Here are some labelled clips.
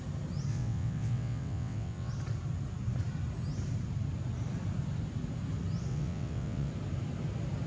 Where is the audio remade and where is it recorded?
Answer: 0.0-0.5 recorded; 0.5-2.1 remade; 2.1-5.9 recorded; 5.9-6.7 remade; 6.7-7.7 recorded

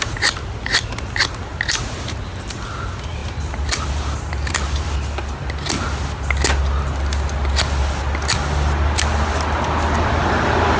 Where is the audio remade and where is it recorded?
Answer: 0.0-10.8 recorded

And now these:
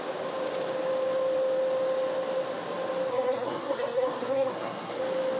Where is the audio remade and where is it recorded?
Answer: 0.0-3.1 recorded; 3.1-5.0 remade; 5.0-5.4 recorded

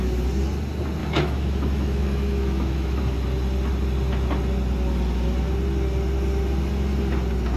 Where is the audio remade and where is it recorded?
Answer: 0.0-1.0 recorded; 1.0-3.0 remade; 3.0-7.6 recorded

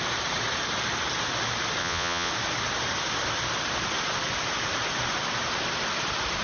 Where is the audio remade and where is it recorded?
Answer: 0.0-1.8 recorded; 1.8-2.3 remade; 2.3-6.4 recorded